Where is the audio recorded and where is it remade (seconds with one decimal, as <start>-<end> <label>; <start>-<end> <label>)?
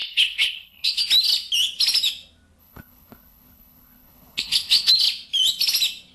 0.0-1.0 remade; 1.0-2.6 recorded; 2.6-4.9 remade; 4.9-6.1 recorded